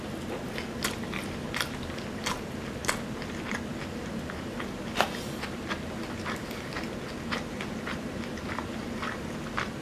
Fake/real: real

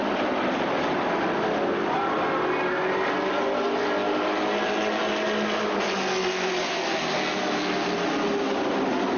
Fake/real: real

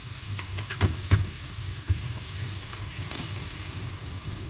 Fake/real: fake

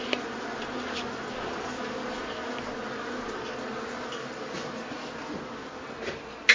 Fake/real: real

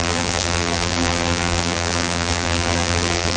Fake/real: fake